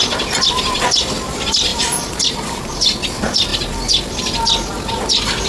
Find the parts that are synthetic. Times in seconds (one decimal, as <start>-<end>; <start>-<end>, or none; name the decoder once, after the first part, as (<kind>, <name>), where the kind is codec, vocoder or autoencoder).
1.7-2.6 (vocoder, BigVGAN v2)